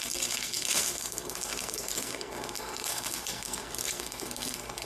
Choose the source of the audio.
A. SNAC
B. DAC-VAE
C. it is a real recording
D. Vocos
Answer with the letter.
A